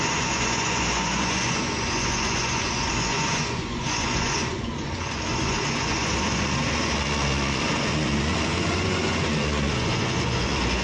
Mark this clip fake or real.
fake